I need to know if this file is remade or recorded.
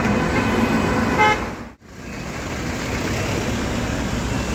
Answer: recorded